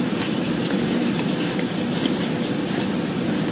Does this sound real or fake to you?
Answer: real